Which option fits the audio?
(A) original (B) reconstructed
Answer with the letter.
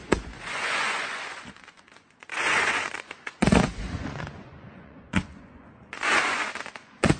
B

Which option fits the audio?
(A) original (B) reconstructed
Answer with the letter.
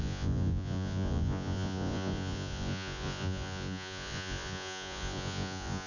B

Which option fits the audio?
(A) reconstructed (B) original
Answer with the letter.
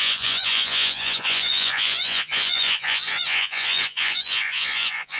A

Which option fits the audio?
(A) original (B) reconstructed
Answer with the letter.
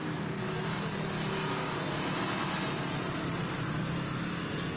A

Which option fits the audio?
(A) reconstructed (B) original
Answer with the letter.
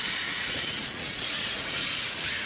A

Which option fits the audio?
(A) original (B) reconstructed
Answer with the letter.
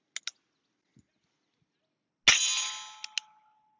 A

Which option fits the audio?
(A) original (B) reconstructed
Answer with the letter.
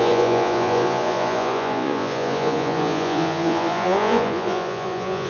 B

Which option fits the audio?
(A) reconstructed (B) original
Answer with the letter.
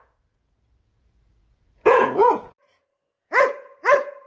A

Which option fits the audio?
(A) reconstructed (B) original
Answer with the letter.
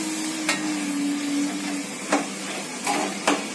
B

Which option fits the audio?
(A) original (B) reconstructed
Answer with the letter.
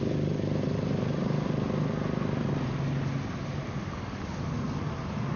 A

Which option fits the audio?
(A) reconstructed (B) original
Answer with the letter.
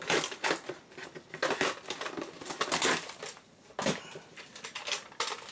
B